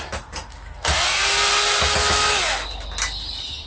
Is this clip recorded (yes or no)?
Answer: yes